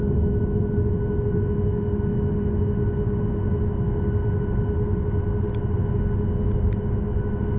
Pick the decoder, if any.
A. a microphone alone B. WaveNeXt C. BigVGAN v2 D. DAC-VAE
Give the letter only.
A